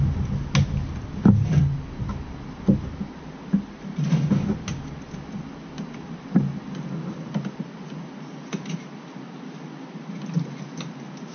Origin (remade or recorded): recorded